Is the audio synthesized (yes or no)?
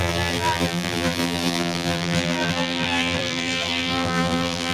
yes